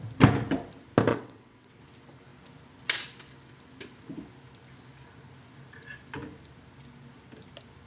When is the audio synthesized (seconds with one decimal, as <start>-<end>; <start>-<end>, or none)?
1.1-1.8